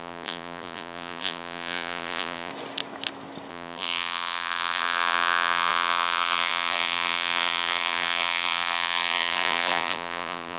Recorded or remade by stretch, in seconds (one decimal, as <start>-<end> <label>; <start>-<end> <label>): 0.0-2.5 remade; 2.5-3.5 recorded; 3.5-10.6 remade